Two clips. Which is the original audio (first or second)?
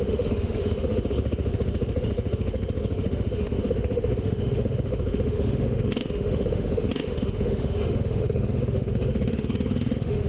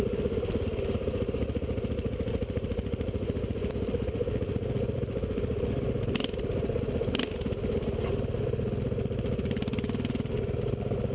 second